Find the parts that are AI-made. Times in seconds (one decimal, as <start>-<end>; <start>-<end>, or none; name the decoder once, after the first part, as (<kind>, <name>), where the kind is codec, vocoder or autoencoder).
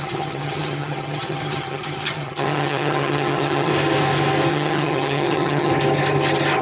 0.0-3.7 (vocoder, HiFi-GAN); 4.5-5.7